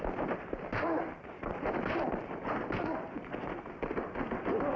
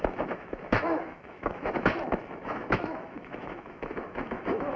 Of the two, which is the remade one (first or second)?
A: second